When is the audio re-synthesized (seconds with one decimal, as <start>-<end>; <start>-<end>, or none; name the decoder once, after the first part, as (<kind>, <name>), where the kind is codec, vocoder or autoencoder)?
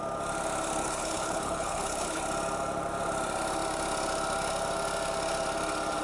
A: 0.8-2.2 (codec, HILCodec)